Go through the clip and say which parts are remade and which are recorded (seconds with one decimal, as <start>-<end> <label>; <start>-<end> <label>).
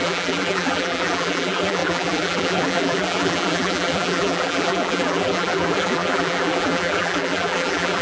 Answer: 0.0-8.0 remade